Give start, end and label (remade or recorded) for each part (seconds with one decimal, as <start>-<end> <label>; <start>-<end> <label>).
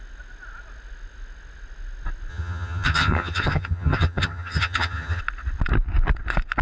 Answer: 0.0-2.3 recorded; 2.3-5.2 remade; 5.2-6.6 recorded